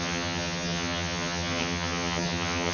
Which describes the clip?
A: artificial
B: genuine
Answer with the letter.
A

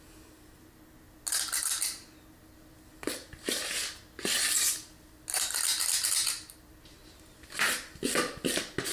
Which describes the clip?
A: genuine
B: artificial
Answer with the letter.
A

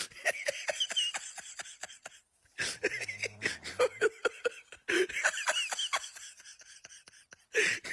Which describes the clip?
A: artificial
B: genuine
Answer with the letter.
B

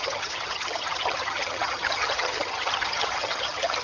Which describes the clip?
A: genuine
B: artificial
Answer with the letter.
B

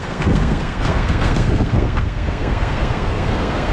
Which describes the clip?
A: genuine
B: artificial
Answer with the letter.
B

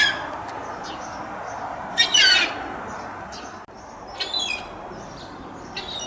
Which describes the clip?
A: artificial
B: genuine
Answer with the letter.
B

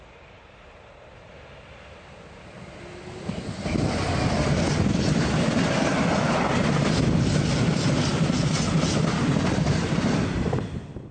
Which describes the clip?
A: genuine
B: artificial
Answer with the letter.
A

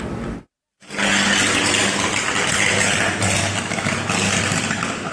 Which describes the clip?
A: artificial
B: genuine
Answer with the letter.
B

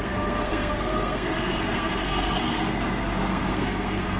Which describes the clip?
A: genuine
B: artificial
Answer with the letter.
B